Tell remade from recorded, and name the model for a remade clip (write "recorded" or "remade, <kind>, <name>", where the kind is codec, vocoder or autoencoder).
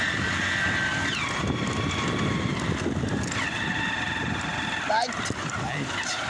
recorded